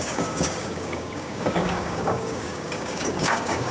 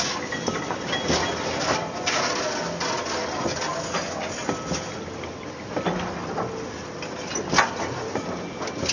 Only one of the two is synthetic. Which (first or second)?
first